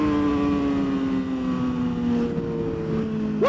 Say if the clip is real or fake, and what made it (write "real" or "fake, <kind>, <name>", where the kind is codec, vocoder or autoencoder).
real